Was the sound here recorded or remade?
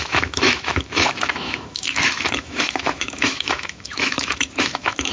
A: remade